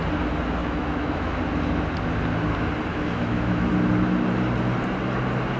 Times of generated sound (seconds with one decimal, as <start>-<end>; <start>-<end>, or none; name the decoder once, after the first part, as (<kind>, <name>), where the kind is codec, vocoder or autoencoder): 0.6-1.4 (autoencoder, DAC-VAE); 2.9-3.7